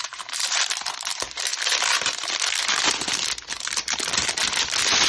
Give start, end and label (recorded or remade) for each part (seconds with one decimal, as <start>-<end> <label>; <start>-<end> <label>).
0.0-1.5 remade; 1.5-2.0 recorded; 2.0-5.1 remade